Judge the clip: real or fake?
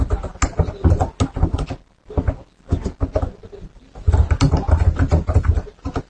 real